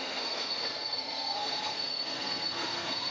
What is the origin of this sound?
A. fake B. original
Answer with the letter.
A